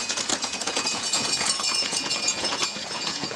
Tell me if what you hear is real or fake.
fake